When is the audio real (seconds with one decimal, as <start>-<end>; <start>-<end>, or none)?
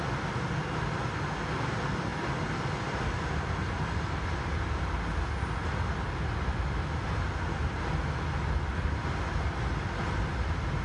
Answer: 0.0-10.8